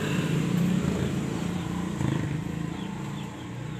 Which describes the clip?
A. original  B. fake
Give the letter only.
B